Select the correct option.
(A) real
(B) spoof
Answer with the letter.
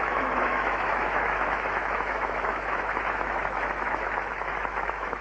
B